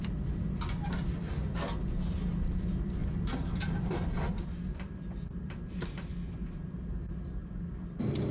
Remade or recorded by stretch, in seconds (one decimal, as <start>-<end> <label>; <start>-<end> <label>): 0.0-8.3 recorded